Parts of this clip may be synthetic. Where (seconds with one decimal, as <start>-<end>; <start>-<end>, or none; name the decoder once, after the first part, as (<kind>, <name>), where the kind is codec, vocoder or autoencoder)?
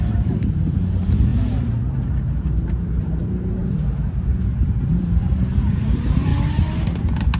0.0-6.3 (vocoder, BigVGAN v2)